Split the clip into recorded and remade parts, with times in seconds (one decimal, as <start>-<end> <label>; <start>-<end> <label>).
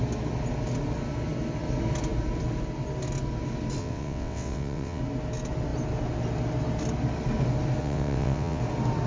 0.0-3.8 recorded; 3.8-5.0 remade; 5.0-7.8 recorded; 7.8-8.6 remade; 8.6-9.1 recorded